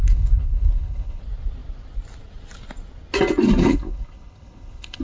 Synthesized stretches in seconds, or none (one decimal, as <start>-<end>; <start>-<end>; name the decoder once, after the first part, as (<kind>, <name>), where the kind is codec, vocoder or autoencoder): 0.0-1.2 (codec, HILCodec); 3.6-5.0